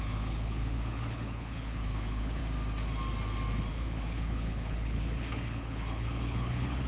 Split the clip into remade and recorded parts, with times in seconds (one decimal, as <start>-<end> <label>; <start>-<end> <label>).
0.0-2.4 remade; 2.4-3.7 recorded; 3.7-6.9 remade